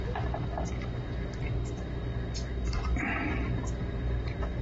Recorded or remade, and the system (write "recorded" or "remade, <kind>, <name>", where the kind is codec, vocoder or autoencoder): recorded